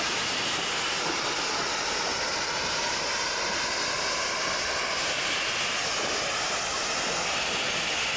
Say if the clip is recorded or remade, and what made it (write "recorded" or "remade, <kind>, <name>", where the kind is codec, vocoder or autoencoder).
recorded